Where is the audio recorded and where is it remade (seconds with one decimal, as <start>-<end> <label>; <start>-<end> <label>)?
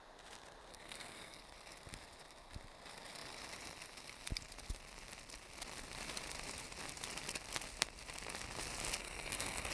0.0-0.7 recorded; 0.7-1.4 remade; 1.4-9.0 recorded; 9.0-9.7 remade